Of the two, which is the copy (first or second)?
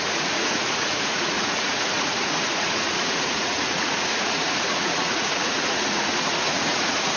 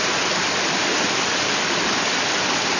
first